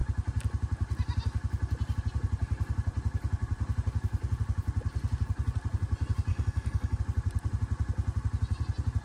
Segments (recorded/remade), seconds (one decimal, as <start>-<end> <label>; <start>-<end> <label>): 0.0-6.3 recorded; 6.3-7.0 remade; 7.0-9.0 recorded